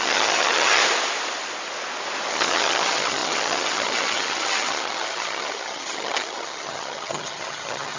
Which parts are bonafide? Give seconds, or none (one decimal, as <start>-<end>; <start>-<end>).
0.8-2.3